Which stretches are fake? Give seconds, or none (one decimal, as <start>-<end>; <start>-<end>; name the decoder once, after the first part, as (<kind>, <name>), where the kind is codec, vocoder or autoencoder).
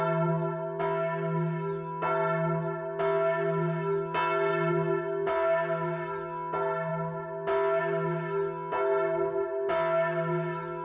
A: none